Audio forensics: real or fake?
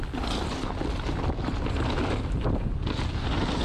real